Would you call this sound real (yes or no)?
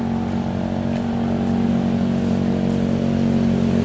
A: yes